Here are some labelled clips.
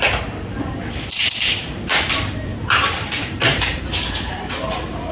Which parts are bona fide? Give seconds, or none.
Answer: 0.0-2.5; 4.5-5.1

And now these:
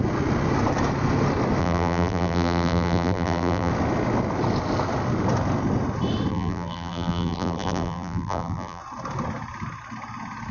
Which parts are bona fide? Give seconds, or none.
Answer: 0.0-1.6; 3.7-6.3; 8.8-10.5

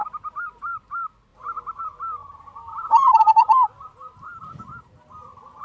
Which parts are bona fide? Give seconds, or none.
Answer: 0.8-2.2; 4.9-5.6

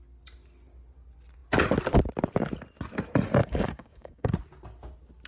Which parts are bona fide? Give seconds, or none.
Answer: 0.0-3.4; 4.3-5.3

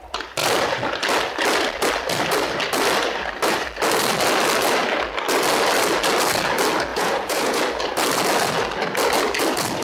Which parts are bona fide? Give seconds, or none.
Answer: 0.0-6.9; 7.6-9.8

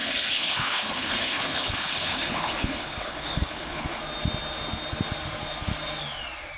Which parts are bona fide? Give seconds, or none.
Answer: 4.0-6.6

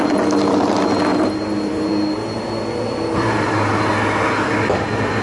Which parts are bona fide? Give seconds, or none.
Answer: 0.0-1.1; 3.8-5.2

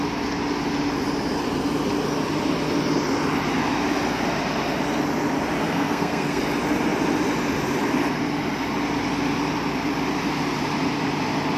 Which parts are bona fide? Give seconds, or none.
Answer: 0.0-5.6; 6.4-11.6